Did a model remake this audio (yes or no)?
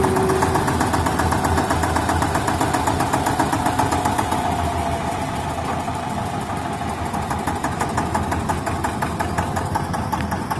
no